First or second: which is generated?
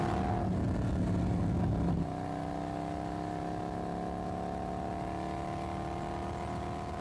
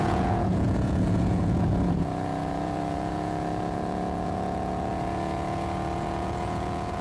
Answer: second